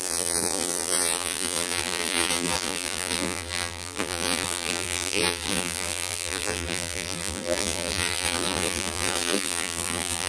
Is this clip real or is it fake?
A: fake